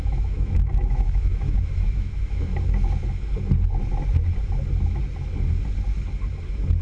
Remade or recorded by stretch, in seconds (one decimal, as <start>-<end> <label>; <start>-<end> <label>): 0.0-2.5 remade; 2.5-6.8 recorded